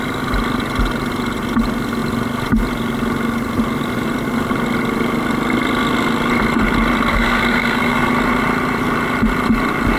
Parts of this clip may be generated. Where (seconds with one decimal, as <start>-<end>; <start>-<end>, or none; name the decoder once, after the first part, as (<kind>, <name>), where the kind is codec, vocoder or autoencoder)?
7.1-8.1 (codec, SNAC)